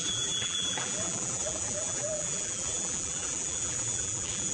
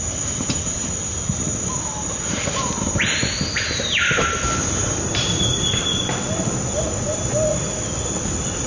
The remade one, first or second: first